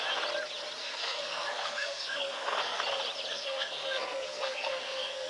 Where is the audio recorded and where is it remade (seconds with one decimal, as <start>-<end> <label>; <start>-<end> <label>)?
0.0-0.8 recorded; 0.8-2.8 remade; 2.8-3.3 recorded; 3.3-5.3 remade